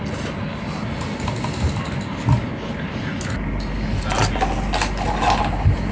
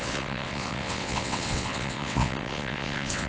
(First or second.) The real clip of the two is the first